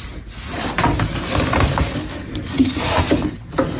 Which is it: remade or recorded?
recorded